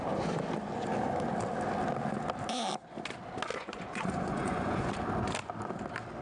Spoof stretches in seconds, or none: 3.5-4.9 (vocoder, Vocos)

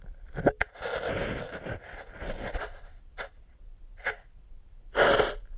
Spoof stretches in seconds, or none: none

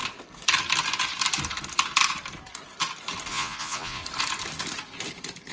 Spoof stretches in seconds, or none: 3.3-4.0 (vocoder, Vocos)

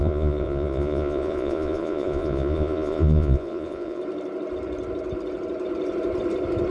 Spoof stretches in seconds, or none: 0.0-4.0 (vocoder, Vocos)